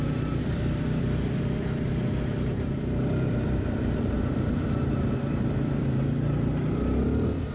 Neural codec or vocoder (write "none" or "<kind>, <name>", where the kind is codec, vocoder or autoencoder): vocoder, BigVGAN v2